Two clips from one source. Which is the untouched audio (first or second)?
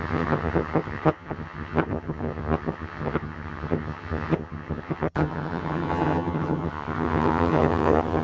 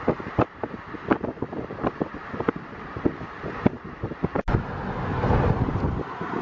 second